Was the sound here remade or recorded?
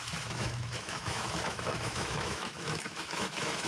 remade